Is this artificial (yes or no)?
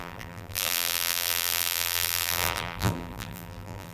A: yes